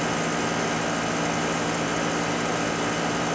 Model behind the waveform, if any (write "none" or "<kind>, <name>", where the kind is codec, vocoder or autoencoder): none